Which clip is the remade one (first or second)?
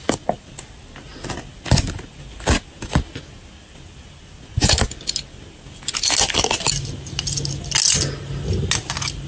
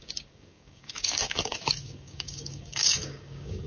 second